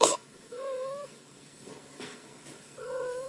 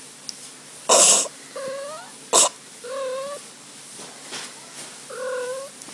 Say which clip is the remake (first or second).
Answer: first